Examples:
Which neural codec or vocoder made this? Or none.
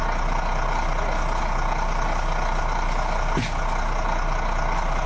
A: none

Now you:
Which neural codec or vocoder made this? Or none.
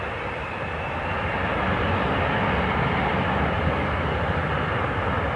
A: none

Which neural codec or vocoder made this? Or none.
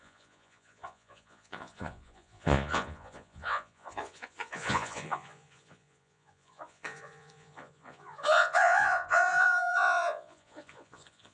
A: vocoder, Vocos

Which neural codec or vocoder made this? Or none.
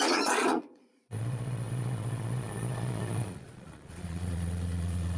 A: vocoder, Vocos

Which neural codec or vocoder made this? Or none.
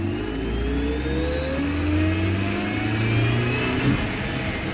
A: none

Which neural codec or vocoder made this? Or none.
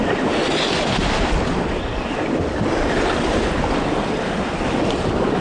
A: none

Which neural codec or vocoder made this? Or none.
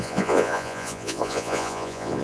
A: vocoder, Vocos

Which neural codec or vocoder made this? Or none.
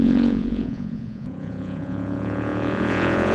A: vocoder, Vocos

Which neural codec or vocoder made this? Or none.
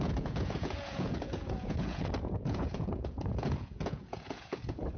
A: vocoder, Vocos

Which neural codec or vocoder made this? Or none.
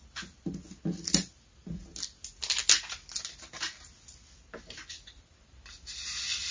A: none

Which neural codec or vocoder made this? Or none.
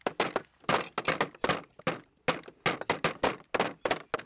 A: none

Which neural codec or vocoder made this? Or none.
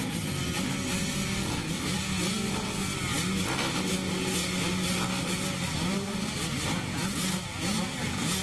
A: none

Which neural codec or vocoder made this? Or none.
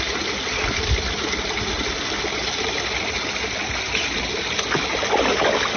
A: none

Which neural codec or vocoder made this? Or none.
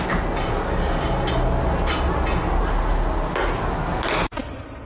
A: none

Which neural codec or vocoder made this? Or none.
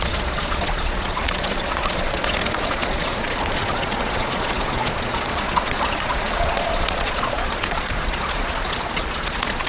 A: vocoder, Vocos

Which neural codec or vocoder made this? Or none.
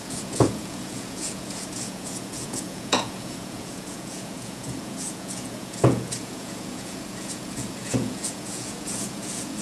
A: vocoder, Vocos